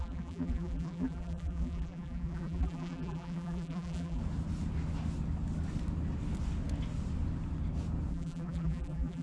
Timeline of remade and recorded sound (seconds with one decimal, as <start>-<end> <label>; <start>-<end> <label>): 0.0-4.2 remade; 4.2-8.1 recorded; 8.1-9.2 remade

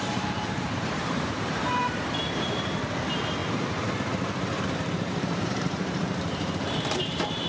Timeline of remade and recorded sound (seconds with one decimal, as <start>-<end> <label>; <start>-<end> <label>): 0.0-7.5 remade